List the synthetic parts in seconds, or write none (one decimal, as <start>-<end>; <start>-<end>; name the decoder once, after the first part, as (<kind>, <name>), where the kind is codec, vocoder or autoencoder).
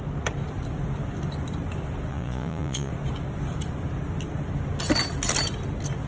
2.1-2.9 (vocoder, Vocos)